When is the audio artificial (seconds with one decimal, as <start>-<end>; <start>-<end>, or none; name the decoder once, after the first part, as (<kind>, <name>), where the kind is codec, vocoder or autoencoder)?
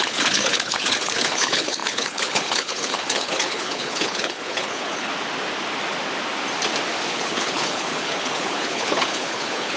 0.0-5.1 (codec, HILCodec); 7.1-9.8